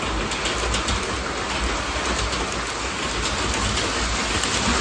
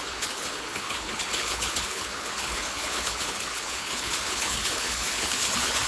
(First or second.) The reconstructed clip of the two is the second